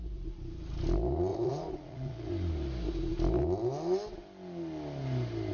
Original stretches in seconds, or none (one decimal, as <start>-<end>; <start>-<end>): 0.0-1.3; 2.3-5.5